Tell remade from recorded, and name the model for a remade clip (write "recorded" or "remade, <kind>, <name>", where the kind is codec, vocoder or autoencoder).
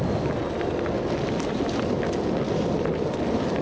recorded